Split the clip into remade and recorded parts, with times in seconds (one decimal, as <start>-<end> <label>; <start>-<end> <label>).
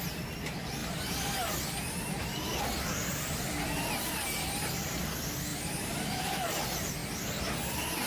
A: 0.0-8.1 recorded